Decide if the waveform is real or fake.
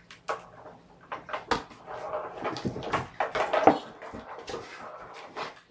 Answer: real